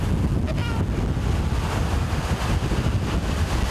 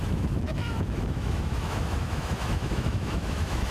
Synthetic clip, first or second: second